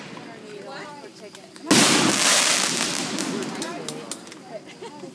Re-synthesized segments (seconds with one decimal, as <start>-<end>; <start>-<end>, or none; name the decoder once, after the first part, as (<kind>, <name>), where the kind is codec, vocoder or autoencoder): none